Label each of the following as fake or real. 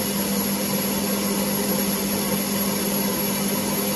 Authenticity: real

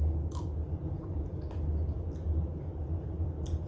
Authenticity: real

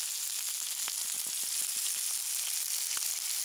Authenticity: real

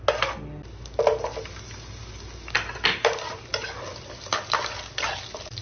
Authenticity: real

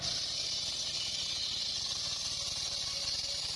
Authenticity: real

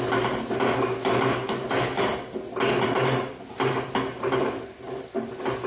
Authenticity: real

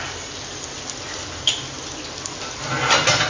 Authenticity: real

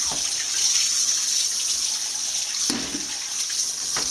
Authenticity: fake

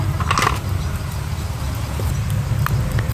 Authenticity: real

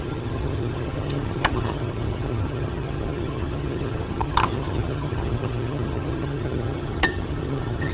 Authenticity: fake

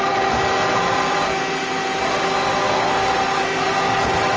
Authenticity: real